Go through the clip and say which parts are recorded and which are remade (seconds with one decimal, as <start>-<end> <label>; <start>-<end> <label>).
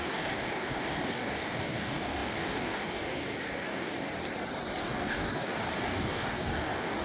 0.0-4.1 remade; 4.1-4.8 recorded; 4.8-7.0 remade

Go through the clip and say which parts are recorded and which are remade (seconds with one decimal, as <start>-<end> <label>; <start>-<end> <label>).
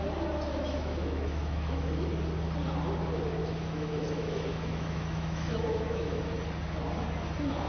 0.0-0.5 recorded; 0.5-2.1 remade; 2.1-3.4 recorded; 3.4-6.2 remade; 6.2-7.7 recorded